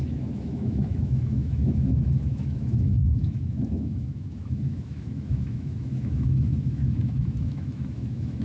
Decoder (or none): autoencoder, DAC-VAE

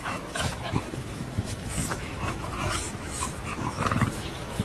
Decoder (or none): autoencoder, DAC-VAE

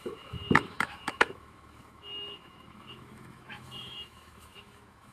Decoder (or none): autoencoder, DAC-VAE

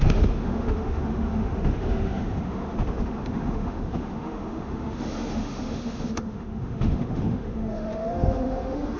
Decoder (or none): autoencoder, DAC-VAE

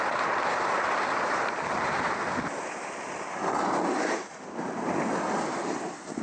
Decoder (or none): none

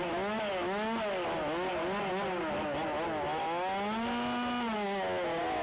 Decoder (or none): none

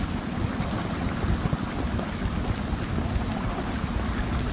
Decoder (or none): none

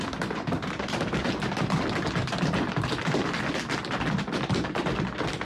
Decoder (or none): none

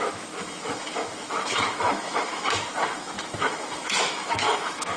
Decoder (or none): autoencoder, DAC-VAE